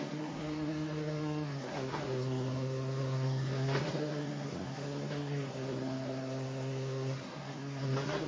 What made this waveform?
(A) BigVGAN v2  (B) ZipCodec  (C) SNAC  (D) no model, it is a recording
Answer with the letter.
C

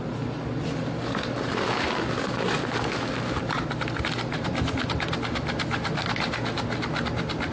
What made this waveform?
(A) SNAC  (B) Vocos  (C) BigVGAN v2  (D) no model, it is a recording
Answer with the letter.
D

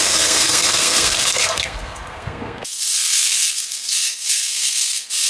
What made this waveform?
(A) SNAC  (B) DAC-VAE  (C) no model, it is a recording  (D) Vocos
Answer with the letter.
A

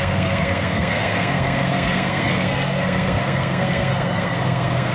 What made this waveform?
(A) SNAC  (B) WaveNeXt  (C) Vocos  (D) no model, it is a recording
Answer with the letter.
A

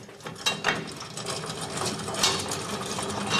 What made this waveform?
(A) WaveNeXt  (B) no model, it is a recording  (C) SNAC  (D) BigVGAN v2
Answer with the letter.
B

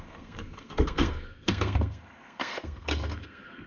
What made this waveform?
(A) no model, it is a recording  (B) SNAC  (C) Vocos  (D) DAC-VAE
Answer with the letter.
B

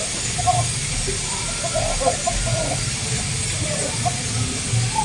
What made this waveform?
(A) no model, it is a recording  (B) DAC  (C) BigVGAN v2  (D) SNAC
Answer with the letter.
A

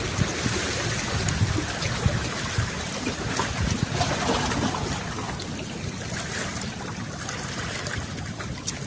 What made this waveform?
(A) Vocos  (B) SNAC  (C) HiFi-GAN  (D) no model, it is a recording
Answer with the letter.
D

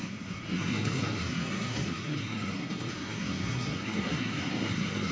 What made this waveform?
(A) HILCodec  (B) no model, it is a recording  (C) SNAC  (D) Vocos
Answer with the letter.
C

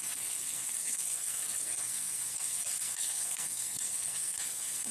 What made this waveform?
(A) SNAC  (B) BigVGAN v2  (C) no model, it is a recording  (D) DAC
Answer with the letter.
A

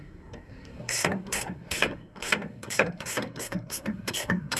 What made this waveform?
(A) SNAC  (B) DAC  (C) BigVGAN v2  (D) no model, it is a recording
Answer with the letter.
A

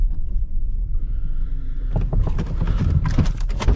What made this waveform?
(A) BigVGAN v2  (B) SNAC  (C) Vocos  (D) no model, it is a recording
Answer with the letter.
D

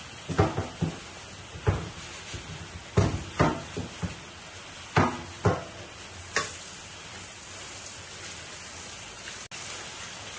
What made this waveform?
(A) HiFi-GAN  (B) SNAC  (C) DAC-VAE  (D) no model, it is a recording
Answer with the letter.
D